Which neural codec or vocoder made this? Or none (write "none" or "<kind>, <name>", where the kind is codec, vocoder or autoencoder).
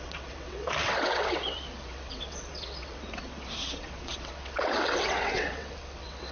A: vocoder, WaveNeXt